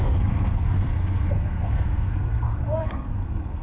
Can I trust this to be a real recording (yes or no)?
no